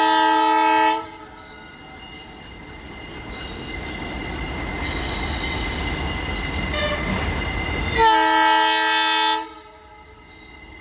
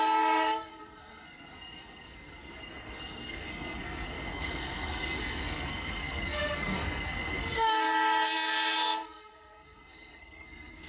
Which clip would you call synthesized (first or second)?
second